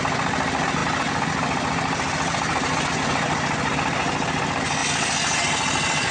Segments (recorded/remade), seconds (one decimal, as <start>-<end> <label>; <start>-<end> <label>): 0.0-6.1 recorded